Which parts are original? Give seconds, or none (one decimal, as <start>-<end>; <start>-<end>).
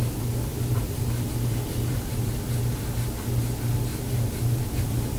0.0-0.5; 2.3-3.9